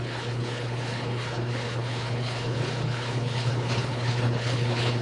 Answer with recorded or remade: remade